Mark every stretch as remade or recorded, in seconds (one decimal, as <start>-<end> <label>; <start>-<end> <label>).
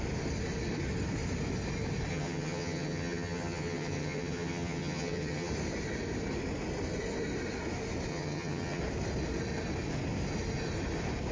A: 0.0-2.1 recorded; 2.1-5.5 remade; 5.5-8.1 recorded; 8.1-8.8 remade; 8.8-11.3 recorded